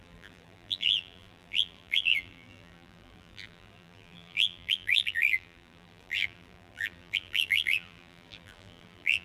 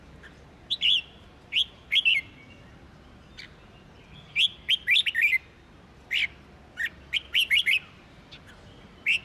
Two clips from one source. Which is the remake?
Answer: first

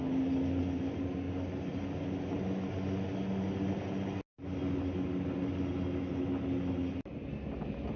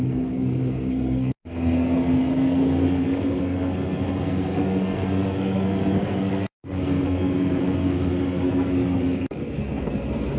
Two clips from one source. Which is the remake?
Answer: second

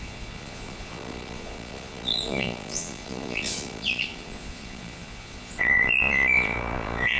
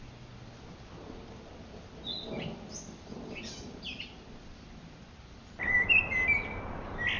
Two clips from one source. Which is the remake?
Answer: first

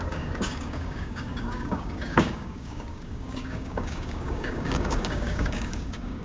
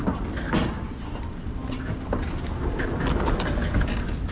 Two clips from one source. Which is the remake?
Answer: first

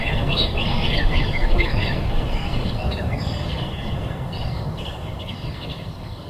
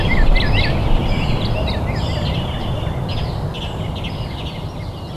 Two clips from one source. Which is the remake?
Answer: first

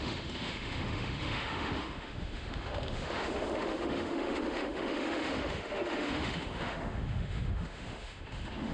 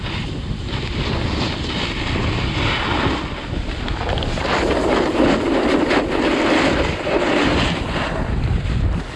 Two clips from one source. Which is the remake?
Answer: first